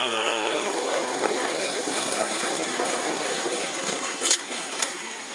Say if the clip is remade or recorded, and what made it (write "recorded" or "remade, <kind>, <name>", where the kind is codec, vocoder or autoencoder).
remade, codec, SNAC